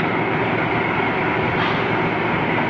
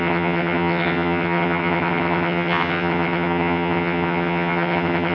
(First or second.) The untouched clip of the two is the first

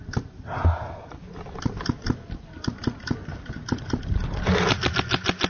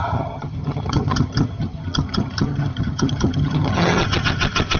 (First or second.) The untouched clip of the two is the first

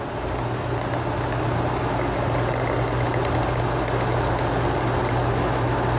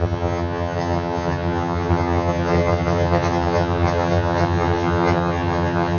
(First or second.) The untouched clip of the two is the first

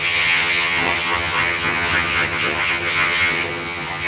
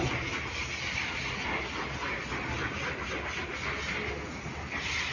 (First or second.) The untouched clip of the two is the second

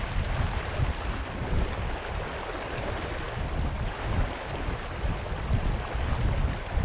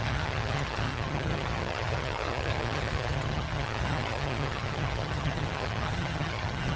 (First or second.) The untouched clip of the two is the first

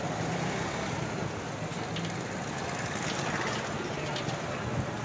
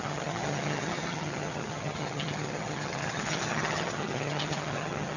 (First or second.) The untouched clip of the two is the first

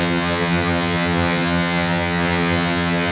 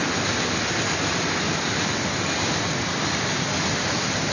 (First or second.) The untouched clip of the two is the second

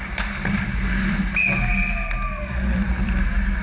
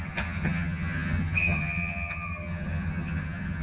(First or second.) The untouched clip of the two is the first